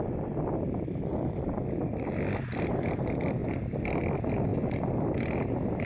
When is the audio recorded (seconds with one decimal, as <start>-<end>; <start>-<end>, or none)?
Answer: 0.0-5.8